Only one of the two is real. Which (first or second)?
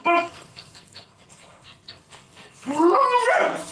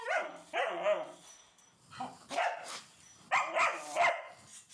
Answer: second